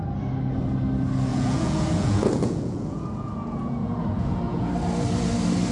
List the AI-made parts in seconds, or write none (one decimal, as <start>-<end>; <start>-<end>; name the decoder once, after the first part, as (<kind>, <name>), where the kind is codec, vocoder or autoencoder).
1.3-4.7 (vocoder, Vocos)

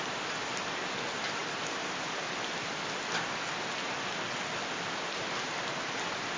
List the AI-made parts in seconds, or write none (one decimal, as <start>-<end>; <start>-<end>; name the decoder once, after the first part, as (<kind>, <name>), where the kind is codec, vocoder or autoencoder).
none

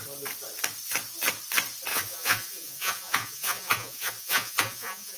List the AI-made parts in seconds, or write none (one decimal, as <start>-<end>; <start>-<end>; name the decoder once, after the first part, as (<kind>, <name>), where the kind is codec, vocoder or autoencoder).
1.9-5.2 (vocoder, Vocos)

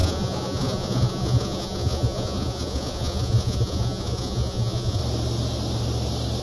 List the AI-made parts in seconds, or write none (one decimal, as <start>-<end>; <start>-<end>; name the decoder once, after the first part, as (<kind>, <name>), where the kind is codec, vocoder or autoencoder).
0.0-5.0 (vocoder, Vocos)

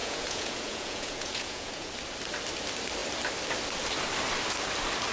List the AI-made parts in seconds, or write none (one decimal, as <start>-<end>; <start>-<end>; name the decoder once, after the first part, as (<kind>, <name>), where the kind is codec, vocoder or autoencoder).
0.0-1.9 (vocoder, Vocos)

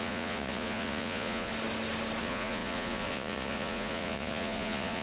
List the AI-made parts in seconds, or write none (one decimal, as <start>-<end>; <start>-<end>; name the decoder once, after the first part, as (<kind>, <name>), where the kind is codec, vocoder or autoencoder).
0.0-1.5 (vocoder, Vocos); 2.2-5.0